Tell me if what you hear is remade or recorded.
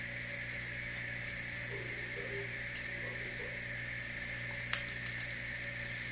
recorded